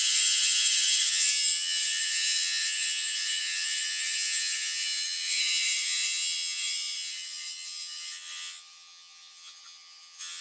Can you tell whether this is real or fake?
fake